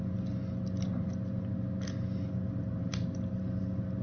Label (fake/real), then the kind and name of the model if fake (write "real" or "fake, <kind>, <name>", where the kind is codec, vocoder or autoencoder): real